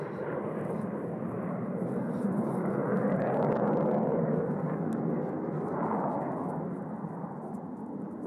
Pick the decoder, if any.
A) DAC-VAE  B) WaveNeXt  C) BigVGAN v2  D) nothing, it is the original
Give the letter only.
D